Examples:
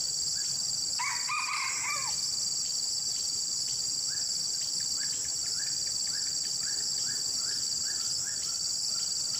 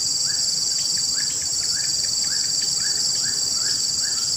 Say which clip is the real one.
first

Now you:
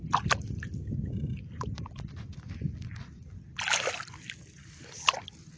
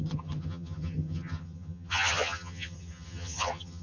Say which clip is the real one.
first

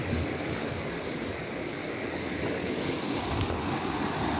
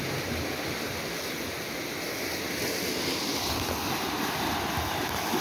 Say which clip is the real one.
second